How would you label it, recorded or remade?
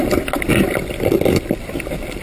recorded